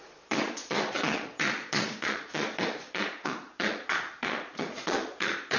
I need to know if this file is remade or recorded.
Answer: remade